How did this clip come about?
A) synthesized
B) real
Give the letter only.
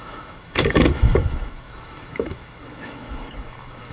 A